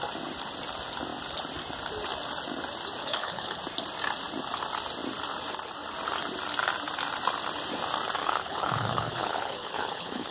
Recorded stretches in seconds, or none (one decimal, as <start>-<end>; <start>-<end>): 0.0-3.0; 3.6-8.2

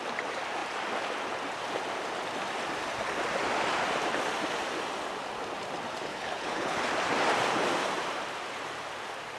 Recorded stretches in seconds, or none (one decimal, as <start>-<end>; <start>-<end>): 0.0-6.1; 6.8-9.4

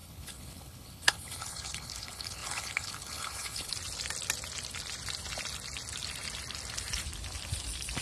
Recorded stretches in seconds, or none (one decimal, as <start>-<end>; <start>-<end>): 3.7-8.0

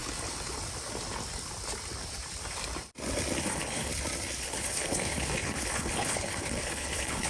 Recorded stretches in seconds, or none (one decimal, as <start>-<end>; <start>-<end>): 0.0-3.4; 3.9-4.4

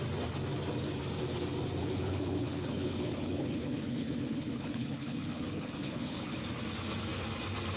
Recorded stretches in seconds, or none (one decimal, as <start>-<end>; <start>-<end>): 0.0-1.8; 6.4-7.8

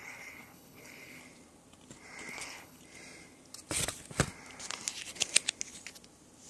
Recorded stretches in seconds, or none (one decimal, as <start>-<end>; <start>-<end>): 1.2-2.3; 2.8-6.5